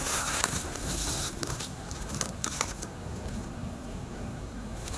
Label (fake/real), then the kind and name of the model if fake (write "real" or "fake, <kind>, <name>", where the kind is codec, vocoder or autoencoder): fake, codec, SNAC